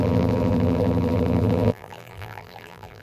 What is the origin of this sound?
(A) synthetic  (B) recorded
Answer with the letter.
A